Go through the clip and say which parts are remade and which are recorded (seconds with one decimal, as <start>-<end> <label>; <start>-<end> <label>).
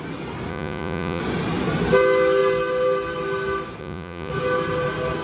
0.0-0.5 recorded; 0.5-1.2 remade; 1.2-3.8 recorded; 3.8-4.3 remade; 4.3-5.2 recorded